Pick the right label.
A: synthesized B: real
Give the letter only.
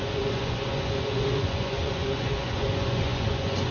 A